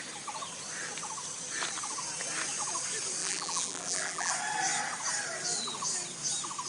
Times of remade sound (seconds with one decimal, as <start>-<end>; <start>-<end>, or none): 3.2-4.3